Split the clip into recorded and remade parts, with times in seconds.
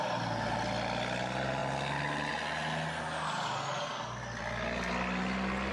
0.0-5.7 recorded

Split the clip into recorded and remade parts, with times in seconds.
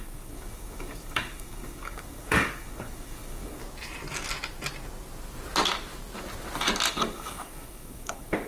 0.0-3.6 remade; 3.6-6.9 recorded; 6.9-8.5 remade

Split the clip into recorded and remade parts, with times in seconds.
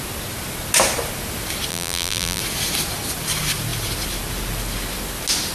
0.0-1.7 recorded; 1.7-2.4 remade; 2.4-5.5 recorded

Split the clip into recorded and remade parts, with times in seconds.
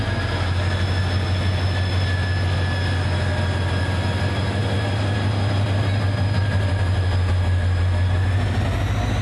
0.0-9.2 recorded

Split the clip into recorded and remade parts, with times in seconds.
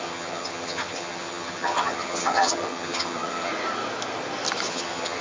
0.0-3.5 remade; 3.5-4.7 recorded; 4.7-5.2 remade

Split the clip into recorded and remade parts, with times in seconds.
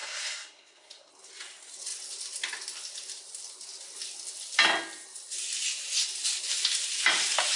0.0-1.1 remade; 1.1-7.6 recorded